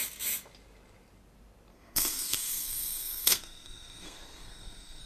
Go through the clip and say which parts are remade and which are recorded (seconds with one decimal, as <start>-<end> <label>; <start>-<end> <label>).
0.0-1.7 recorded; 1.7-5.0 remade